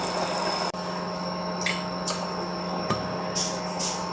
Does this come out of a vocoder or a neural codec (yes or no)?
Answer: no